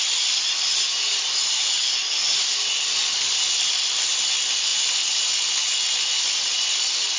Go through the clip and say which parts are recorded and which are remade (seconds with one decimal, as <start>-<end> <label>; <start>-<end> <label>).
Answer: 0.0-7.2 recorded